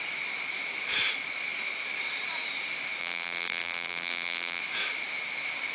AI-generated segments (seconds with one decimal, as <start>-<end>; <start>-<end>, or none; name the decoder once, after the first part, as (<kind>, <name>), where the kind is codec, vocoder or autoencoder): 3.0-4.6 (vocoder, BigVGAN v2)